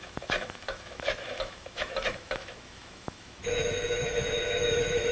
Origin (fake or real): fake